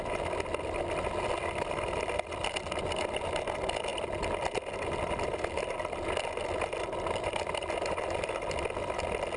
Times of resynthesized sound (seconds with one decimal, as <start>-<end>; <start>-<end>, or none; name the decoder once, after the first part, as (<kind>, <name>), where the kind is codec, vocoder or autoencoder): none